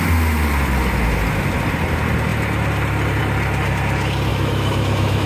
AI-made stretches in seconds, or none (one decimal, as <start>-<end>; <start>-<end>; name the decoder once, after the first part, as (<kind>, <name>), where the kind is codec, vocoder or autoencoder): 4.3-5.3 (autoencoder, DAC-VAE)